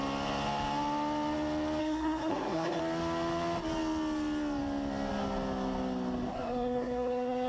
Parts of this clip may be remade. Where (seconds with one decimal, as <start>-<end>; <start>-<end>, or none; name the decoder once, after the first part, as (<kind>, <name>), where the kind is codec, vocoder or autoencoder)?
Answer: 1.8-2.8 (codec, SNAC); 6.3-7.5